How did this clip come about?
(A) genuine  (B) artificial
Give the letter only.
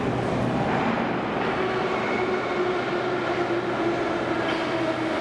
A